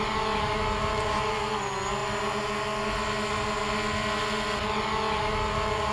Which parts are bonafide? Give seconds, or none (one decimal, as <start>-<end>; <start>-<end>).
0.0-5.9